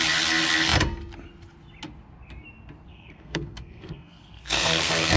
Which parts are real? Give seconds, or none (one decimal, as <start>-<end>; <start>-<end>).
0.0-2.9